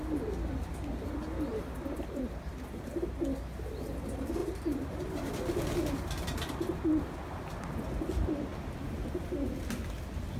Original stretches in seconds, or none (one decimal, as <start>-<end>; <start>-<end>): 0.0-1.5; 2.5-4.4; 5.3-10.4